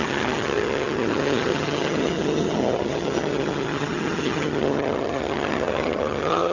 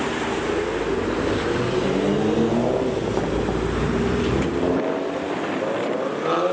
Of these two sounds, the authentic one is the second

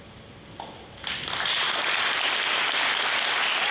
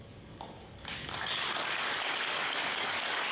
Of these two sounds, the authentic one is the first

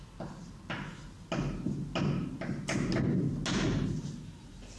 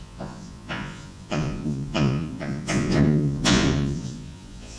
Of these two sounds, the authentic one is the first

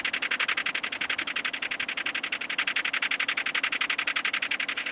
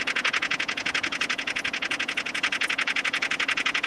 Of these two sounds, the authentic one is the first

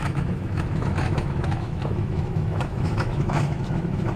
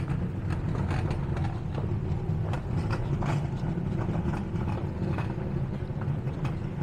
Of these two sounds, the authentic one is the second